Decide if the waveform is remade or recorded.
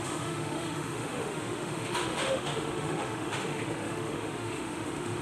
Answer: remade